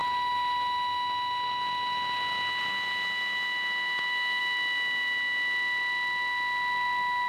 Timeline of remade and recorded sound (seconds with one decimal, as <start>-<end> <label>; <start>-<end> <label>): 0.0-4.4 remade; 4.4-7.3 recorded